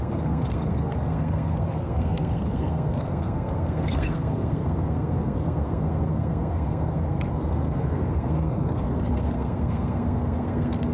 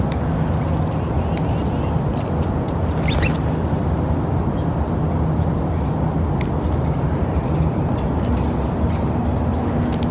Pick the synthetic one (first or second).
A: first